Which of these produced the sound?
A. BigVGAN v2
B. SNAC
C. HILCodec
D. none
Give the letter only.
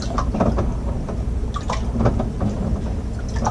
D